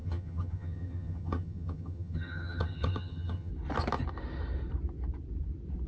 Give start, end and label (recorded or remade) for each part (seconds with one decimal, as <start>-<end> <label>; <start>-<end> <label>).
0.0-3.5 remade; 3.5-5.9 recorded